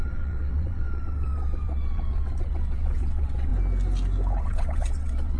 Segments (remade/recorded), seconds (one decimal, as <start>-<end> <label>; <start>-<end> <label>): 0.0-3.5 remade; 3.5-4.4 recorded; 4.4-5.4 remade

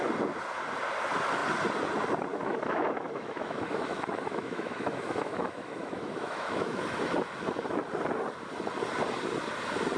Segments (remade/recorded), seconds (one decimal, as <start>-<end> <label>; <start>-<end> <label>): 0.0-2.3 recorded; 2.3-6.8 remade; 6.8-10.0 recorded

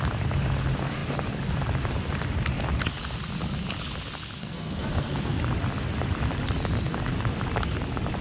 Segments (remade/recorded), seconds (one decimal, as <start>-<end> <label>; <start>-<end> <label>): 0.0-4.4 recorded; 4.4-5.4 remade; 5.4-8.2 recorded